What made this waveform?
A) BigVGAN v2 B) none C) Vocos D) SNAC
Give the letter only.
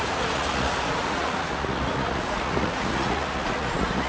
C